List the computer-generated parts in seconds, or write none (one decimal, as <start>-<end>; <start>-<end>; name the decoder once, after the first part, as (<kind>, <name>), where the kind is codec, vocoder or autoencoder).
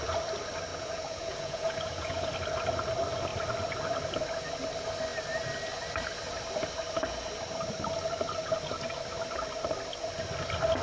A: 0.7-2.3 (vocoder, Vocos)